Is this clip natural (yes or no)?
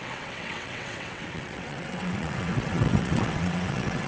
no